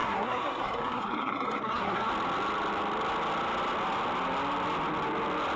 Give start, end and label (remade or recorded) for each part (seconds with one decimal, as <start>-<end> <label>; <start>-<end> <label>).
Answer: 0.0-2.1 remade; 2.1-5.6 recorded